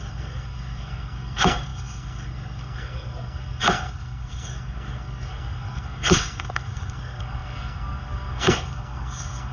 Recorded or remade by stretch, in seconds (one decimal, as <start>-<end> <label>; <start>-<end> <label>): 0.0-9.5 remade